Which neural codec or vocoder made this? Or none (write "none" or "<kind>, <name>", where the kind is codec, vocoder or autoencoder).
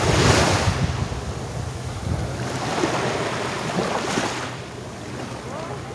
none